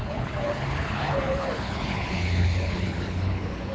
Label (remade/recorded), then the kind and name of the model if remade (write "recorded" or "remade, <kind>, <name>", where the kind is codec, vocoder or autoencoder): remade, codec, HILCodec